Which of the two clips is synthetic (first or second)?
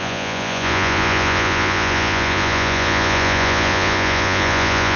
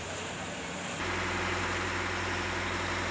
first